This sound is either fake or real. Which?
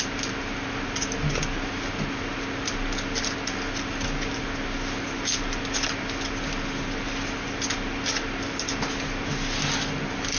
real